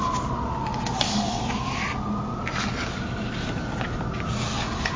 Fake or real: real